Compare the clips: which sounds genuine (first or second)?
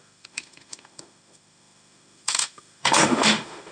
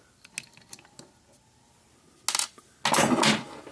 second